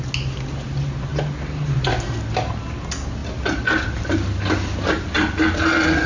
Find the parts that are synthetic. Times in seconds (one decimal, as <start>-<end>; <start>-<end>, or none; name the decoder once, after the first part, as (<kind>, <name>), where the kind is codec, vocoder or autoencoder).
none